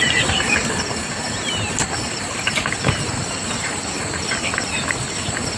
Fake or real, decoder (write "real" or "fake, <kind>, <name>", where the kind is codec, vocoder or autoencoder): real